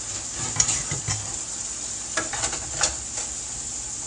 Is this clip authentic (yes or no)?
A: yes